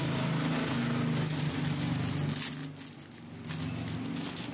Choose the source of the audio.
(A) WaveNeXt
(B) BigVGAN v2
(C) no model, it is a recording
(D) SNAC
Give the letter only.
C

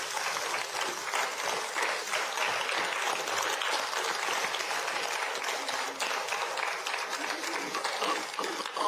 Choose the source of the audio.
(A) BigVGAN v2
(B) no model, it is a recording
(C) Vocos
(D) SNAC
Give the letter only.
B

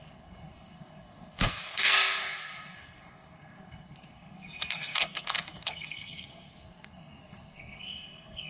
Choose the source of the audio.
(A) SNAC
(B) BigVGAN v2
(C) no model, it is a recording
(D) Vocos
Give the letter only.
A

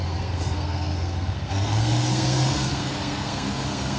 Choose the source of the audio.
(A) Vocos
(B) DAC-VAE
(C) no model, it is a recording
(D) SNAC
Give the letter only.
D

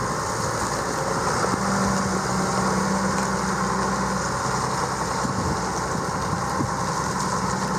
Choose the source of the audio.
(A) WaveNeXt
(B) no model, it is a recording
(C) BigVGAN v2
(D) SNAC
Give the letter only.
B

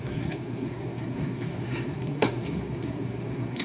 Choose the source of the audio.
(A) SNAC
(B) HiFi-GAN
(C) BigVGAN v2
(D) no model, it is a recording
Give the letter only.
A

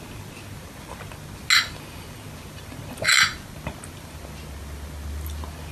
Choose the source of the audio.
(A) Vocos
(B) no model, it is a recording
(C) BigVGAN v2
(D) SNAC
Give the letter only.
B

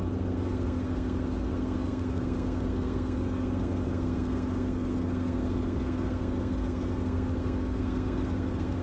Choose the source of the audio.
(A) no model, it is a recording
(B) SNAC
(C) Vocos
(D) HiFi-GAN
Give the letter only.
B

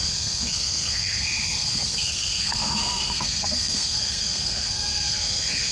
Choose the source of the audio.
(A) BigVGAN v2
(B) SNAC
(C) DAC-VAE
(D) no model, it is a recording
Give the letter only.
B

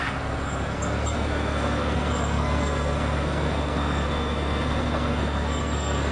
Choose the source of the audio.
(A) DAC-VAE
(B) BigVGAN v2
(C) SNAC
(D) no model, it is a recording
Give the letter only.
C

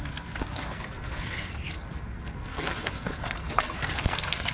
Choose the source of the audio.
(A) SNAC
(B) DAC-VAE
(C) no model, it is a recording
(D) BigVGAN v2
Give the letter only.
A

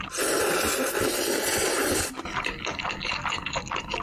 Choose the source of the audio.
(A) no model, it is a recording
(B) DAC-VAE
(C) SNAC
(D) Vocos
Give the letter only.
A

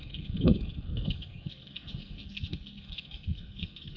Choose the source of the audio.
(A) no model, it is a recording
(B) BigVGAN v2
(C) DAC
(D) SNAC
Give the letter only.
D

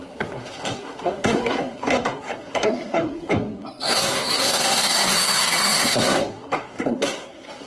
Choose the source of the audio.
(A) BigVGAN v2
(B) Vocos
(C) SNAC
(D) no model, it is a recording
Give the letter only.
C